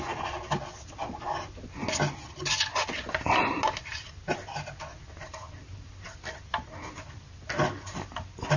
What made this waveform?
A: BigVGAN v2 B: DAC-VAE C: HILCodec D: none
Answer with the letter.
D